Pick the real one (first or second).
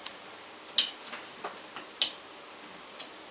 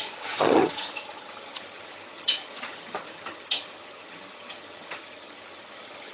first